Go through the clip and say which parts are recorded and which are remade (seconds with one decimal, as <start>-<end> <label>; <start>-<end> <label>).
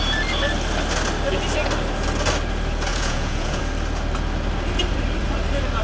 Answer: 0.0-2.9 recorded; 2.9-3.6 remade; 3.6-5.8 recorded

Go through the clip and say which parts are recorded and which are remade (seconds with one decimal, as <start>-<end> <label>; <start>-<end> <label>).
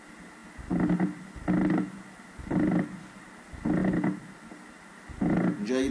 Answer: 0.0-5.9 recorded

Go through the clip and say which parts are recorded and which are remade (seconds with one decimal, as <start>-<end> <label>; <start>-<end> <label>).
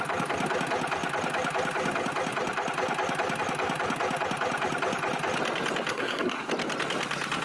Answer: 0.0-5.9 recorded; 5.9-6.5 remade; 6.5-7.4 recorded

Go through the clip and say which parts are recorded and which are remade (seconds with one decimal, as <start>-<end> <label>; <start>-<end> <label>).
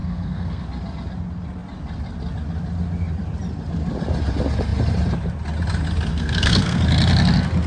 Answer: 0.0-0.6 remade; 0.6-6.1 recorded; 6.1-6.8 remade; 6.8-7.7 recorded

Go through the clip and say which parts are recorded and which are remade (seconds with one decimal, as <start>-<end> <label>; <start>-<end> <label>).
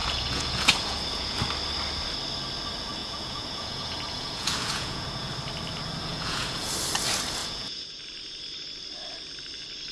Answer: 0.0-1.4 remade; 1.4-3.0 recorded; 3.0-5.3 remade; 5.3-6.1 recorded; 6.1-6.7 remade; 6.7-7.4 recorded; 7.4-8.0 remade; 8.0-9.9 recorded